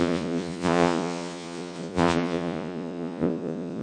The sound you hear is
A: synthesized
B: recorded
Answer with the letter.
A